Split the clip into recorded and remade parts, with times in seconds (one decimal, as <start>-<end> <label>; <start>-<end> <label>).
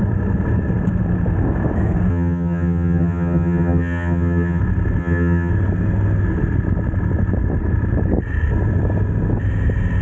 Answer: 0.0-2.1 recorded; 2.1-4.6 remade; 4.6-5.0 recorded; 5.0-5.5 remade; 5.5-10.0 recorded